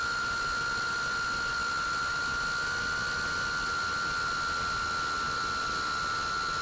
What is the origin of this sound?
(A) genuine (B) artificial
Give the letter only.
A